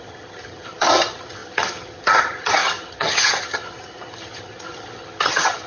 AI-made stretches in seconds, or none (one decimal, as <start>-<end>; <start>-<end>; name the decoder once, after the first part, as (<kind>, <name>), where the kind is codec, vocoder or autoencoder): 0.0-5.7 (vocoder, HiFi-GAN)

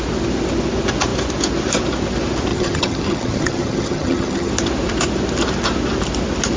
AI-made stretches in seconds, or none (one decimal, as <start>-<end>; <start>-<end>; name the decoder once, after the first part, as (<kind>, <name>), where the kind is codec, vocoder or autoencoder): 2.5-4.5 (vocoder, HiFi-GAN)

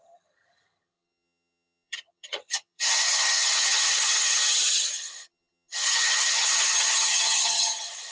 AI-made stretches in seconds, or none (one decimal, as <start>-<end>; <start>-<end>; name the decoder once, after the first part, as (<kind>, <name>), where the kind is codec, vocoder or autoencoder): 0.0-8.1 (vocoder, HiFi-GAN)

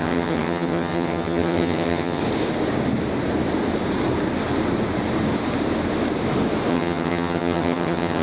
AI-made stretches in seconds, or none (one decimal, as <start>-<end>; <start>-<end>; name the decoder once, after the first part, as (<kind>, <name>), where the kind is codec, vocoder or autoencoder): 0.0-2.2 (vocoder, HiFi-GAN); 6.7-8.2